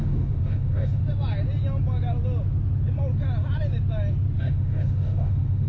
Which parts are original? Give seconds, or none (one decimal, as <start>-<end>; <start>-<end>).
1.0-4.4